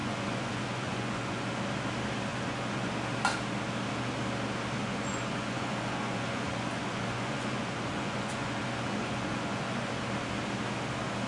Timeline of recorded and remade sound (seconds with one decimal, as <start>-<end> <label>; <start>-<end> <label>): 0.0-1.5 remade; 1.5-2.3 recorded; 2.3-2.9 remade; 2.9-4.8 recorded; 4.8-9.9 remade; 9.9-11.3 recorded